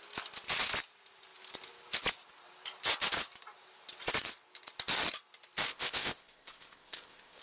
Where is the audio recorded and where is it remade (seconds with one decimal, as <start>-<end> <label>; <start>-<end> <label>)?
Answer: 0.0-5.7 recorded; 5.7-7.4 remade